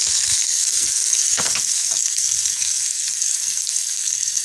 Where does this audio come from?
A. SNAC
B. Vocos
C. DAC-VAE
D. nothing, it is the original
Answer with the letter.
A